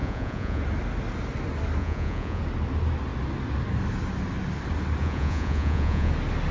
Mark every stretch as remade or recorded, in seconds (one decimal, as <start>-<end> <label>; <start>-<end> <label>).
0.0-0.6 remade; 0.6-1.8 recorded; 1.8-2.4 remade; 2.4-5.0 recorded; 5.0-6.1 remade; 6.1-6.5 recorded